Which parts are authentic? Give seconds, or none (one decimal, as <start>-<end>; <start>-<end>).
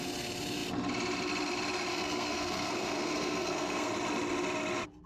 0.0-1.9; 3.9-5.1